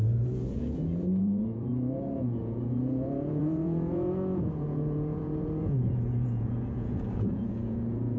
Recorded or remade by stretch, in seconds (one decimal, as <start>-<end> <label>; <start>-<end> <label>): 0.0-8.2 remade